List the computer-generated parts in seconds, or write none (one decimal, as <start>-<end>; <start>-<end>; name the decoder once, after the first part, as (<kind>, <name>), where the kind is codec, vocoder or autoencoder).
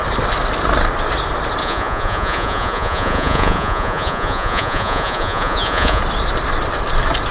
1.6-6.0 (vocoder, Vocos)